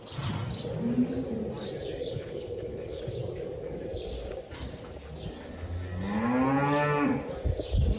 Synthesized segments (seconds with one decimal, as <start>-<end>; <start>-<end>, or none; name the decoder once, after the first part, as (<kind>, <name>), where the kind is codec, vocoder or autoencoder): 2.0-3.0 (codec, HILCodec)